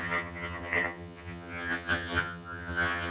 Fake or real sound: fake